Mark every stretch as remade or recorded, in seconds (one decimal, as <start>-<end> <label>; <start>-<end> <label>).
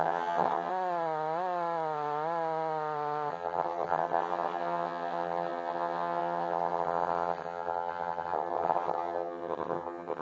0.0-0.7 remade; 0.7-3.3 recorded; 3.3-10.2 remade